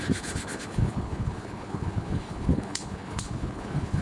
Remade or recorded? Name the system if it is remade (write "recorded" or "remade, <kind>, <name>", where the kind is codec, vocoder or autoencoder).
remade, codec, HILCodec